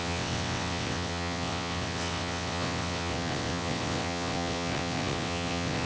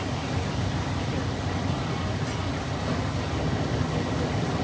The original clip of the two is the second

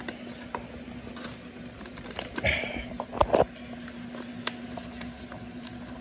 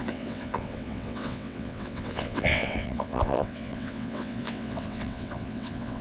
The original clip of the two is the first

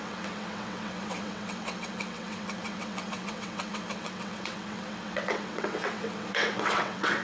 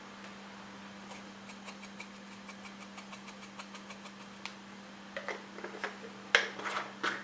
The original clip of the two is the second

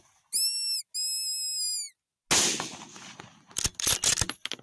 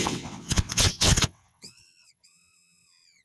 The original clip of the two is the first